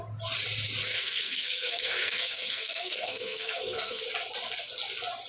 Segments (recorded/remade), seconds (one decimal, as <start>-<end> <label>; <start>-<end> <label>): 0.0-0.8 recorded; 0.8-4.0 remade; 4.0-5.3 recorded